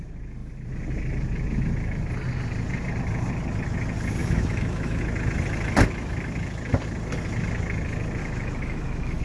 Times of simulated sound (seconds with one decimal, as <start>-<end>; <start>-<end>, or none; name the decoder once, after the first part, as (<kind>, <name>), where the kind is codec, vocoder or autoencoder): 4.2-5.0 (autoencoder, DAC-VAE); 8.2-9.2